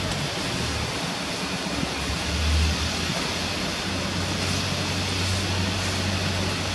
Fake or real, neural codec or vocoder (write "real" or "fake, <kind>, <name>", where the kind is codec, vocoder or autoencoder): real